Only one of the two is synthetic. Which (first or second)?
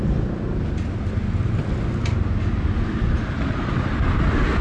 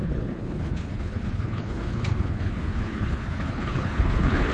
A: second